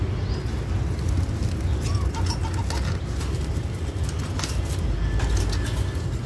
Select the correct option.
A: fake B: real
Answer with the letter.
B